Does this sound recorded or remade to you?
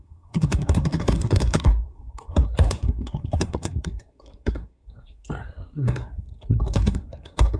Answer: remade